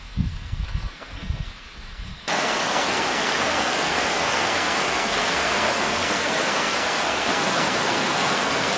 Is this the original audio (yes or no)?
no